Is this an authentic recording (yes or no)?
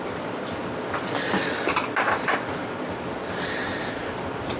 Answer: yes